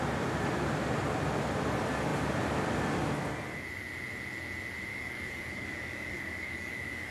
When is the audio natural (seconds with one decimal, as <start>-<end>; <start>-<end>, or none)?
0.0-4.9